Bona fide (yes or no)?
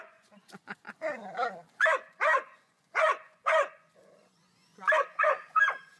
no